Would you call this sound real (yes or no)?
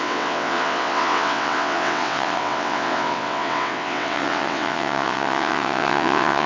no